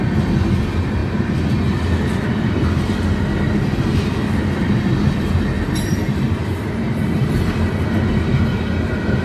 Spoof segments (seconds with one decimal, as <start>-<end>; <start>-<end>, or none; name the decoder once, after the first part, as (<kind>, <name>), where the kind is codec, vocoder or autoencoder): none